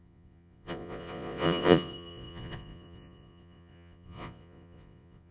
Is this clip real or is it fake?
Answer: fake